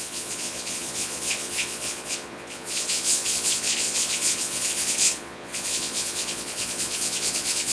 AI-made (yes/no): yes